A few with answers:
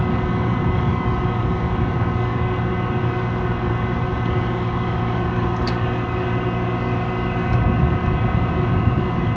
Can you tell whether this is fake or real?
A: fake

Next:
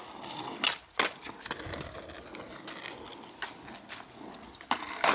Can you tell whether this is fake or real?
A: real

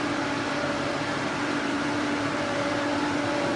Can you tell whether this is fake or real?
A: fake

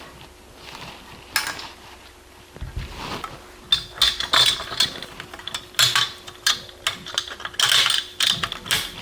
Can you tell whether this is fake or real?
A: real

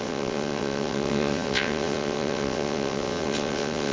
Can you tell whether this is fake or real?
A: fake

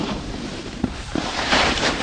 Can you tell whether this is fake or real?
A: fake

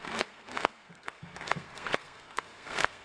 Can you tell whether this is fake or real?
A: fake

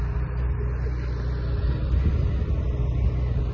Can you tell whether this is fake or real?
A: real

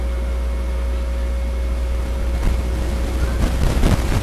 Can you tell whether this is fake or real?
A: real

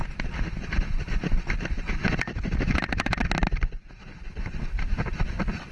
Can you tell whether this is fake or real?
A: real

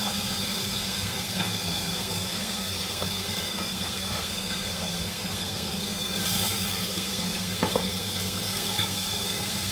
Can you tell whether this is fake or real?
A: fake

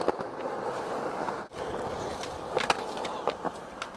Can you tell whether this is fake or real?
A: real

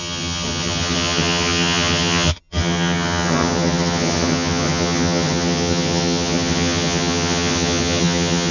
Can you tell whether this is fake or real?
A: fake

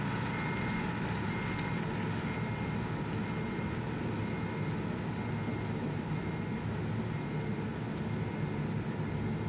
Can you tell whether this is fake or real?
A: real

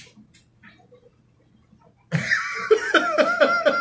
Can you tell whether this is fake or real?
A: real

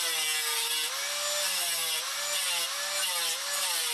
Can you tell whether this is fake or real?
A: real